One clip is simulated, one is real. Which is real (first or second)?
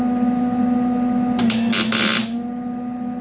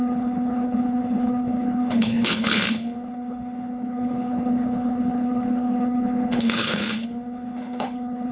first